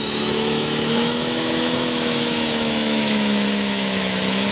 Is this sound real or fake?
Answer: fake